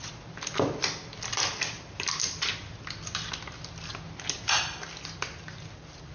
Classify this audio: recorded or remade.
recorded